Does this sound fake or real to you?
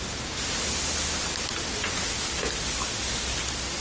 real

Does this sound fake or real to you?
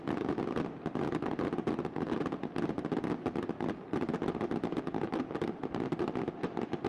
fake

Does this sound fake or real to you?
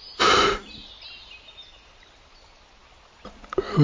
real